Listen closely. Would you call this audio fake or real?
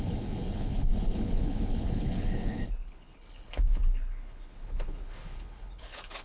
fake